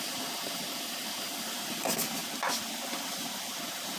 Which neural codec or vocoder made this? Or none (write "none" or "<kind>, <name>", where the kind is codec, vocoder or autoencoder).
none